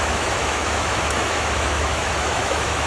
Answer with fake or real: fake